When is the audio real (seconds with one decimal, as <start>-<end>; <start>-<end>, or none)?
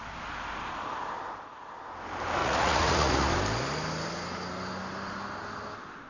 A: 0.0-2.4; 3.3-6.1